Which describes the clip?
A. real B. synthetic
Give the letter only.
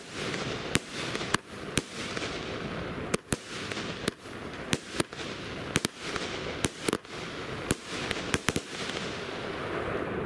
A